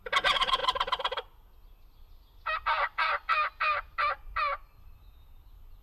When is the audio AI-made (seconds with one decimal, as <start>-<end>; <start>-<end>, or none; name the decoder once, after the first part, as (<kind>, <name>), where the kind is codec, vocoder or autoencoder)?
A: none